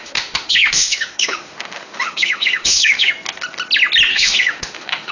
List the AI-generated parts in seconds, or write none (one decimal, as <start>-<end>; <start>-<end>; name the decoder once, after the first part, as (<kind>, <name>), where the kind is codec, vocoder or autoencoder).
0.0-3.1 (autoencoder, DAC-VAE); 4.1-5.1